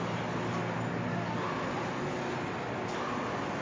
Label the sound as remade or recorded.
recorded